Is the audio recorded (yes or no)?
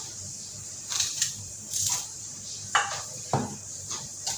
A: no